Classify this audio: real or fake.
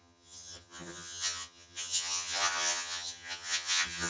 fake